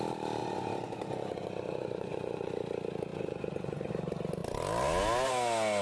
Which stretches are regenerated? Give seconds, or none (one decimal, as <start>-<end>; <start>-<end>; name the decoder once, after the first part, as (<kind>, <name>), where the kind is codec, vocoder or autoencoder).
0.4-2.5 (vocoder, Vocos); 3.1-3.9